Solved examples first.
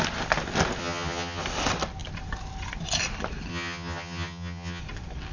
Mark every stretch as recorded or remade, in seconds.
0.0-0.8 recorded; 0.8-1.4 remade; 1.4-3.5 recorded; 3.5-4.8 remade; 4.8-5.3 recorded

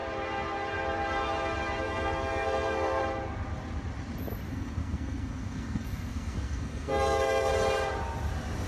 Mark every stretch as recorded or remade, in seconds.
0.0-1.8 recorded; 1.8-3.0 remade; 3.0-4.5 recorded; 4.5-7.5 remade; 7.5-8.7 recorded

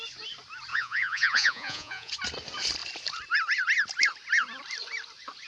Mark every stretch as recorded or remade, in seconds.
0.0-0.7 recorded; 0.7-2.1 remade; 2.1-5.5 recorded